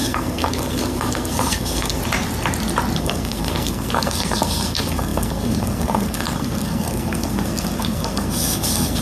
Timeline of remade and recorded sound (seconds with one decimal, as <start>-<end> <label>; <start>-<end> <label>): 0.0-2.0 remade; 2.0-3.0 recorded; 3.0-9.0 remade